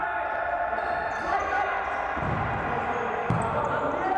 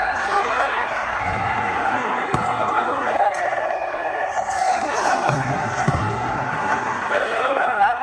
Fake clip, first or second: second